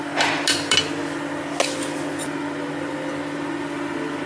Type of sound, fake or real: real